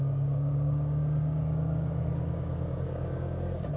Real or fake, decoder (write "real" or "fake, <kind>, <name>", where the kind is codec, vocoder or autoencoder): fake, codec, DAC